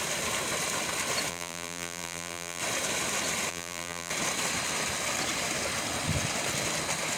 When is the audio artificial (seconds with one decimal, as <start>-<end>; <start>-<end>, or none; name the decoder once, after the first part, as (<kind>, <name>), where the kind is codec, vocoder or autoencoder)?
1.3-2.6 (vocoder, BigVGAN v2); 3.5-4.1